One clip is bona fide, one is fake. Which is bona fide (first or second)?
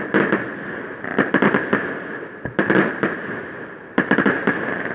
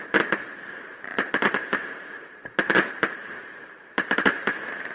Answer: first